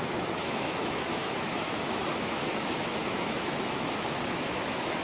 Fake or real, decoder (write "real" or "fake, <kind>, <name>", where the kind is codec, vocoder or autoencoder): fake, autoencoder, DAC-VAE